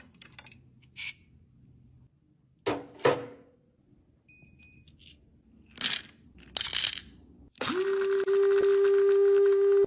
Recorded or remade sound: recorded